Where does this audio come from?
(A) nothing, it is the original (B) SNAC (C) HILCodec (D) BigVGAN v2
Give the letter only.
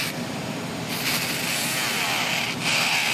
A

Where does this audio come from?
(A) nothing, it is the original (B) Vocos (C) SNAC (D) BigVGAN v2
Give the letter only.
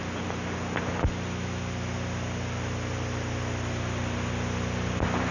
A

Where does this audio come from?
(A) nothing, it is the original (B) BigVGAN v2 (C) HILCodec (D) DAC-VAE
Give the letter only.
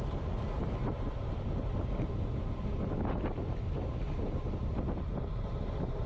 A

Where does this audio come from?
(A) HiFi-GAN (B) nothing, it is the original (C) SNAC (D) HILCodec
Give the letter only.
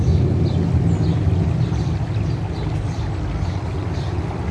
B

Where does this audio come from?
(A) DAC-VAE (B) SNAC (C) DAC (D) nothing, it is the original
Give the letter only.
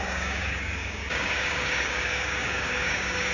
C